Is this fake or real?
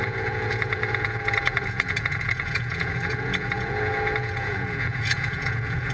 fake